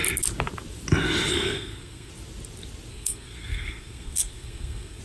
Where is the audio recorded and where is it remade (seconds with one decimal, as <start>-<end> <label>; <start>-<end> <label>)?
0.0-1.3 recorded; 1.3-2.1 remade; 2.1-2.9 recorded; 2.9-5.0 remade